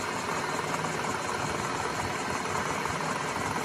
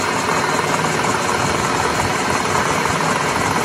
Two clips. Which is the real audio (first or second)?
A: second